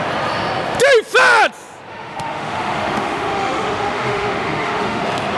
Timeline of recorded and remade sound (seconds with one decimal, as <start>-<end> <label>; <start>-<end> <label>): 0.0-1.9 recorded; 1.9-5.0 remade; 5.0-5.4 recorded